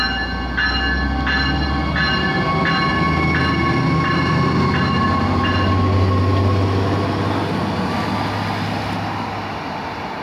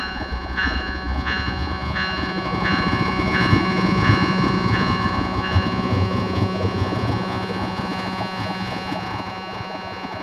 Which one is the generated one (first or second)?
second